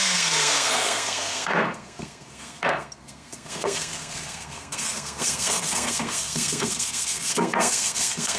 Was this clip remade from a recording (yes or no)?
yes